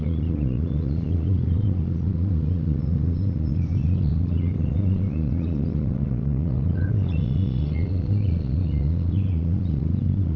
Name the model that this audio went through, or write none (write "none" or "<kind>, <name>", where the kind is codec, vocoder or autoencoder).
vocoder, Vocos